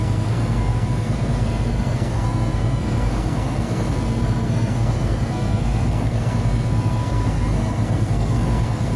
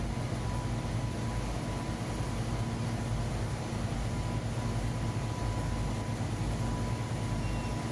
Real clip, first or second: second